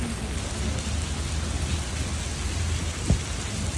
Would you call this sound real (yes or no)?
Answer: yes